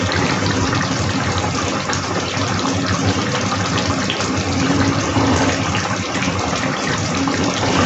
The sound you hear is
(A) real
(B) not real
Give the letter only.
B